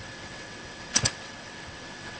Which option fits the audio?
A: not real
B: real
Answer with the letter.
A